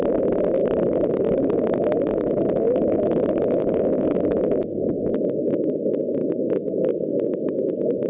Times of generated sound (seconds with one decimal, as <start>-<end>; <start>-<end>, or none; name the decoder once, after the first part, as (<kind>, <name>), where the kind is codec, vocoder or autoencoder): 0.6-4.4 (autoencoder, DAC-VAE); 6.2-6.9